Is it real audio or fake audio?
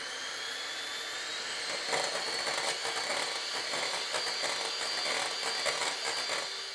real